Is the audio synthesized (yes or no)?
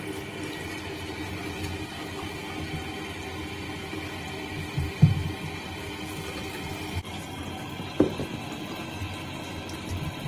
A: no